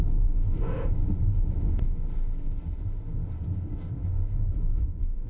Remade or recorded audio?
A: remade